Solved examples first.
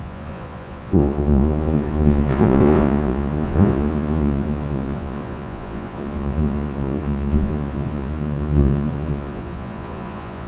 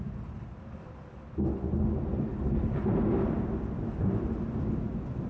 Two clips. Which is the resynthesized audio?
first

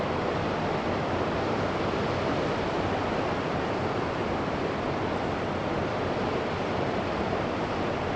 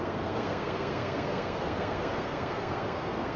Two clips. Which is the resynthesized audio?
second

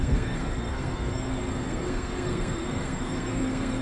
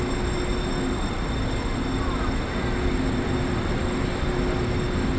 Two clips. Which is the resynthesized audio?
first